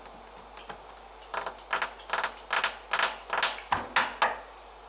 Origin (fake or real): real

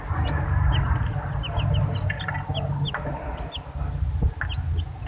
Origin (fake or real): real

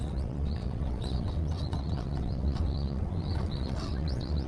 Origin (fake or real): fake